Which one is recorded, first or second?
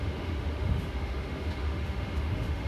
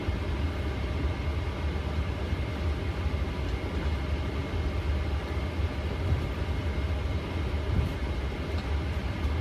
second